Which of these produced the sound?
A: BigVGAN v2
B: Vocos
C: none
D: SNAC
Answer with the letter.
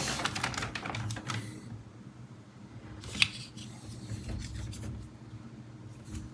C